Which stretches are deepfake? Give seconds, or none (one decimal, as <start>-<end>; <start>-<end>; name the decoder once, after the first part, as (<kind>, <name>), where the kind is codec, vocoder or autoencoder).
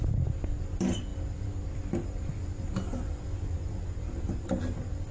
none